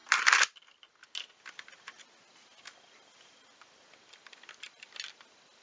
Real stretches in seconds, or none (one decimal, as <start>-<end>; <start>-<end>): 0.0-5.6